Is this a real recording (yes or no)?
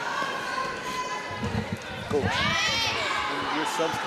yes